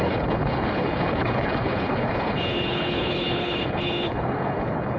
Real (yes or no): no